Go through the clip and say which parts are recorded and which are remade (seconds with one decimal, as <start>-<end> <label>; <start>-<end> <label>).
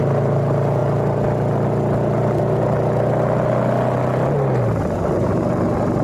0.0-6.0 recorded